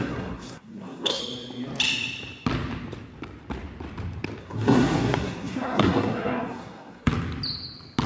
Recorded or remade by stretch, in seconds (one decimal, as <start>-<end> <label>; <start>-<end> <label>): 0.0-1.2 remade; 1.2-4.4 recorded; 4.4-7.1 remade; 7.1-8.1 recorded